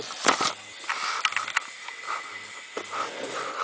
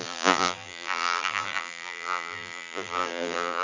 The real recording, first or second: first